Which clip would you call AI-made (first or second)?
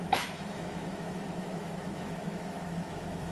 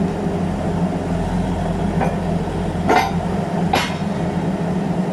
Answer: first